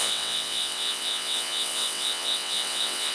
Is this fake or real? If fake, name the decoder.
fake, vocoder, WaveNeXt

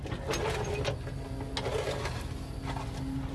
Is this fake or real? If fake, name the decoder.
real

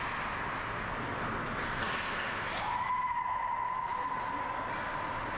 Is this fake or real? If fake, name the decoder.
real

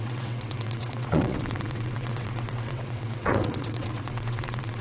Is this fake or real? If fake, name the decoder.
fake, vocoder, WaveNeXt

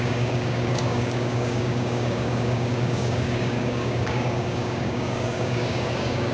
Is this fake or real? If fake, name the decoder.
fake, codec, DAC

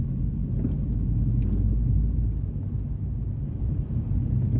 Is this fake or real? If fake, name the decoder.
real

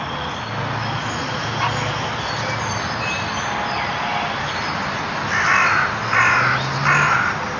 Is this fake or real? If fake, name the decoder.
real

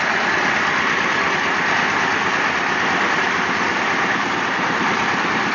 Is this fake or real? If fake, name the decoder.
real